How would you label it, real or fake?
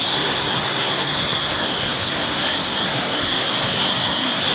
fake